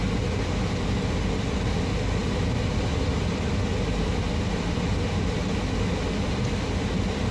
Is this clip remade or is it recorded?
recorded